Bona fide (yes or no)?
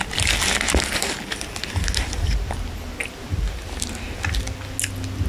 yes